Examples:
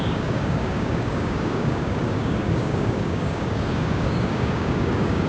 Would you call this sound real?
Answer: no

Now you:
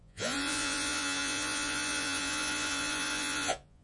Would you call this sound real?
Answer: no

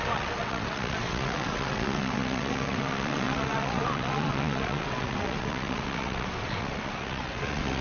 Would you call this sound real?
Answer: no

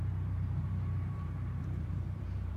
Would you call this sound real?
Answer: no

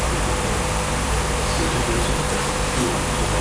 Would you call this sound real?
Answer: no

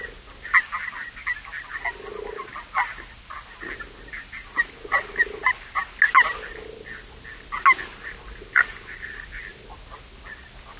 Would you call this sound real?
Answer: yes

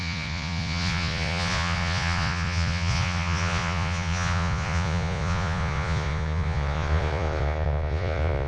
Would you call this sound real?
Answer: no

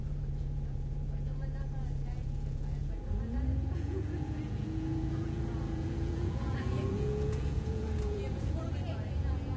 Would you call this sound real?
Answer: no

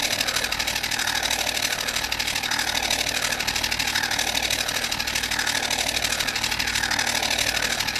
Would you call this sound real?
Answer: yes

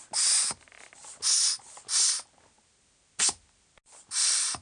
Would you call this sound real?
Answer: yes